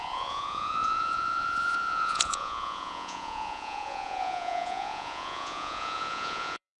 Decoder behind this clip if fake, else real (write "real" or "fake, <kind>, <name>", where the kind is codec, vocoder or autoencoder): fake, vocoder, Vocos